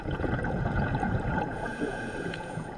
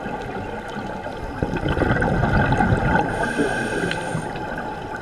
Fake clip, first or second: first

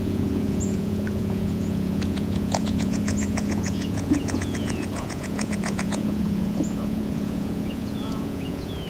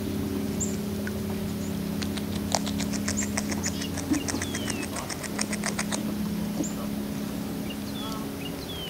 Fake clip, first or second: first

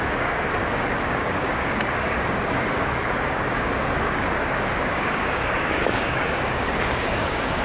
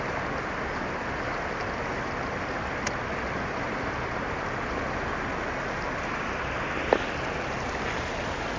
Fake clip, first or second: first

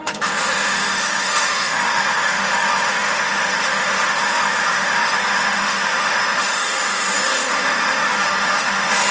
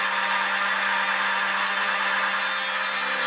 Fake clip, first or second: first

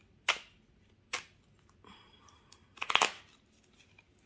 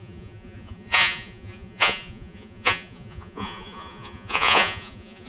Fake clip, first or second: second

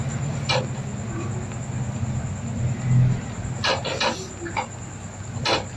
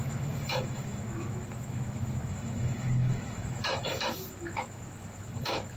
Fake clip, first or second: second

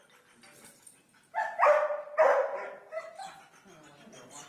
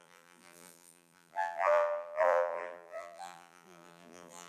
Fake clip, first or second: second